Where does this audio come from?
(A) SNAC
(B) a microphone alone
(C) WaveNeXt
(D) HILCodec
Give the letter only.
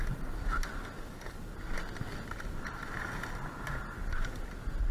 B